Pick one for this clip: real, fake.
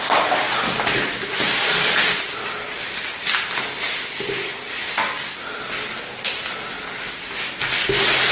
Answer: real